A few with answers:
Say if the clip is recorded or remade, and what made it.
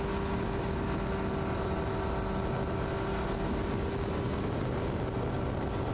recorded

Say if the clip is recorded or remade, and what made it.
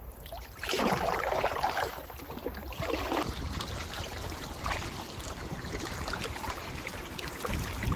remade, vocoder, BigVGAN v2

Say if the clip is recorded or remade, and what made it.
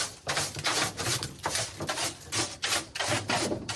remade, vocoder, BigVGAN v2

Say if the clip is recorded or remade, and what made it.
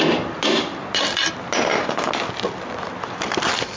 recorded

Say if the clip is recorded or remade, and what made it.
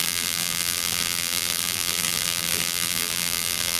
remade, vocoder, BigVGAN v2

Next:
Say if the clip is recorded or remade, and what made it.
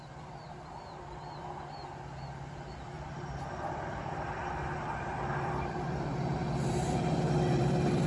remade, vocoder, BigVGAN v2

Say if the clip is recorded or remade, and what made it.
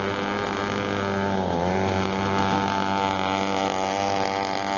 recorded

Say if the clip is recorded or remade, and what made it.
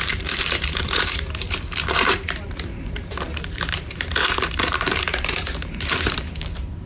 remade, vocoder, BigVGAN v2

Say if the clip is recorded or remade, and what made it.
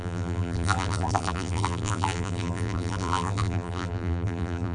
remade, vocoder, BigVGAN v2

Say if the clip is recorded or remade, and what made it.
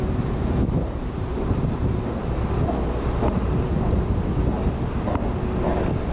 recorded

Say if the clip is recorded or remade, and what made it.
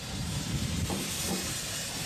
remade, vocoder, BigVGAN v2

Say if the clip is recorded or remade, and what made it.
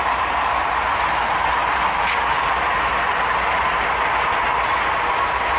recorded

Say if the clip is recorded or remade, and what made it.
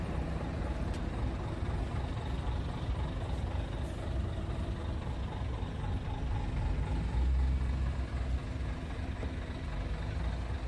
recorded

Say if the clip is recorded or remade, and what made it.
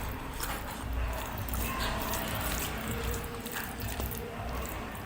remade, vocoder, BigVGAN v2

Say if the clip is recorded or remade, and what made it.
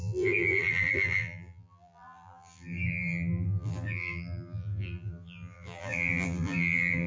remade, vocoder, BigVGAN v2